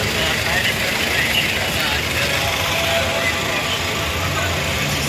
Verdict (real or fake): real